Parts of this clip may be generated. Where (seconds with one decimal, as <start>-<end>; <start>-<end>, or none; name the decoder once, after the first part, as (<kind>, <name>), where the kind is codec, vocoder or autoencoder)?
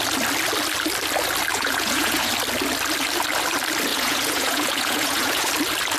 1.5-2.3 (vocoder, Vocos); 3.9-5.5